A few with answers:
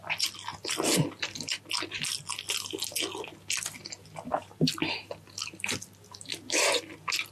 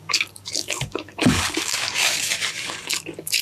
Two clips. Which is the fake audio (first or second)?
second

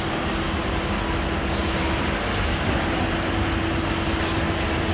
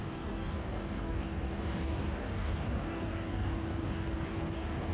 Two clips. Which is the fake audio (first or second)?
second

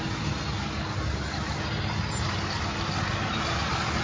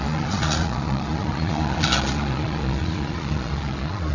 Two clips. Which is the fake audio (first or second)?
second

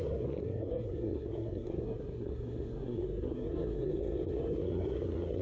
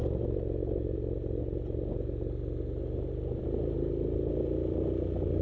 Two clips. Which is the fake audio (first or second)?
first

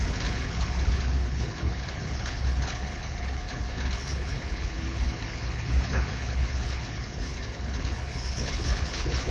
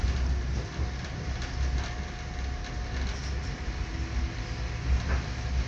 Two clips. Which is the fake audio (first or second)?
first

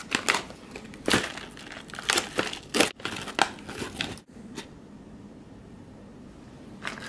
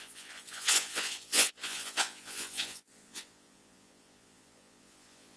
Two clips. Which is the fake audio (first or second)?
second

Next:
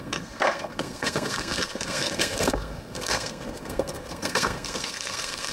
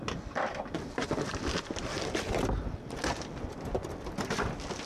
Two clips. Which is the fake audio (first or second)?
first